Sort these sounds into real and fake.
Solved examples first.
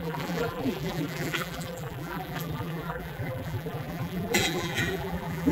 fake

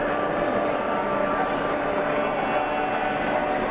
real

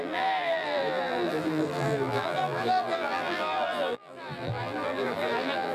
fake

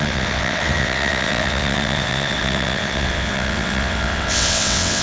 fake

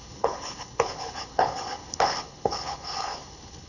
fake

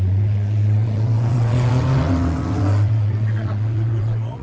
fake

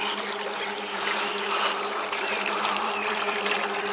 fake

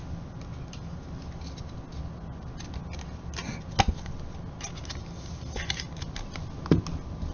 real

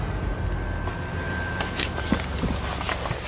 real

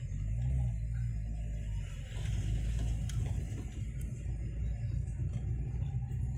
real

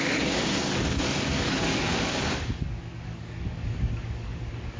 fake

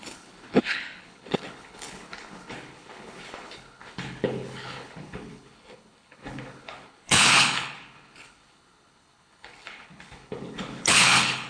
fake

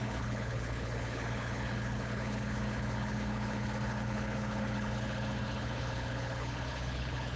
fake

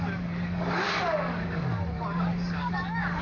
fake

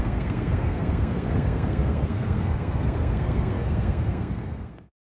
fake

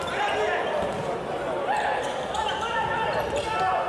real